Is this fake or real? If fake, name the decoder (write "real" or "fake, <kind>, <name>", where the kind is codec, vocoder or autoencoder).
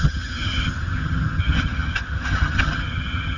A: fake, vocoder, HiFi-GAN